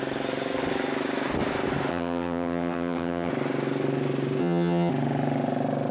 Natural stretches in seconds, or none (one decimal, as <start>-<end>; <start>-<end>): 0.0-1.9; 3.3-4.4; 4.9-5.9